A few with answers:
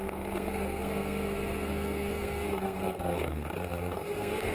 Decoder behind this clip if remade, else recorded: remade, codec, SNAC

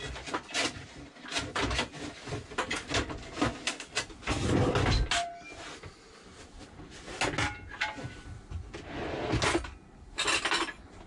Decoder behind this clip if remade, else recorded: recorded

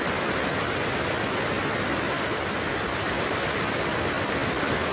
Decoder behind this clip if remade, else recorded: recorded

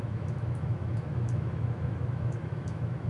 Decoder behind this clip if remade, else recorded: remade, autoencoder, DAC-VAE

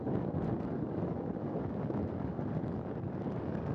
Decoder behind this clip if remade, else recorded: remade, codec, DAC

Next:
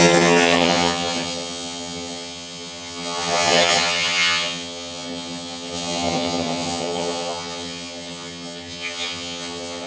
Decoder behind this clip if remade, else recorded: remade, vocoder, HiFi-GAN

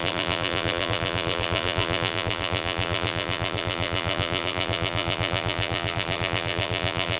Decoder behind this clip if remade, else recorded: remade, vocoder, BigVGAN v2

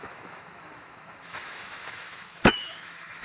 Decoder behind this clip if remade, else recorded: remade, autoencoder, DAC-VAE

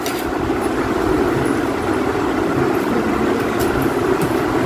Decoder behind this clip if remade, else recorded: recorded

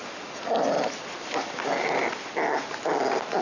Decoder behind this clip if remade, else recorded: recorded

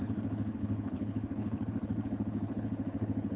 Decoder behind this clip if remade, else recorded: remade, codec, HILCodec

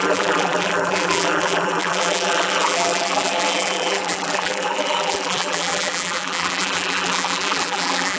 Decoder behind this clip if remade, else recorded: remade, vocoder, BigVGAN v2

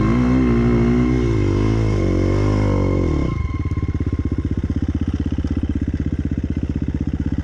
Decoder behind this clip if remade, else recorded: recorded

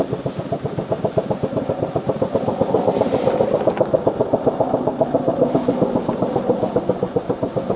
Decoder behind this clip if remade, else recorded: recorded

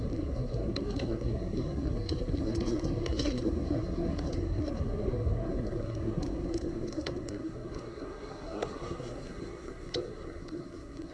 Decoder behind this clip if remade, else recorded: remade, codec, SNAC